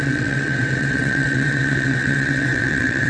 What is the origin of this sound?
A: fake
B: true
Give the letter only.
A